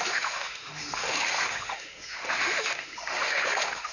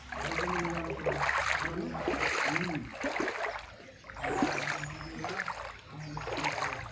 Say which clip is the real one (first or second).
second